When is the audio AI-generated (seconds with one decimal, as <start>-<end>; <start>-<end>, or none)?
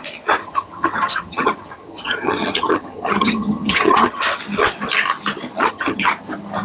0.4-4.4; 5.6-6.1